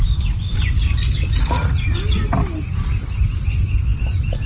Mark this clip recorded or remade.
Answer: recorded